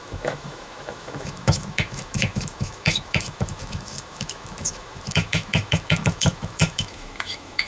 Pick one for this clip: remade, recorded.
remade